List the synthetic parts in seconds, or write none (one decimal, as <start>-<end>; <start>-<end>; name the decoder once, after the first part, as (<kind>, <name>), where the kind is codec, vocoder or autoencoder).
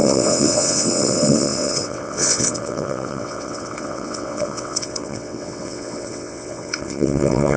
0.0-7.6 (vocoder, WaveNeXt)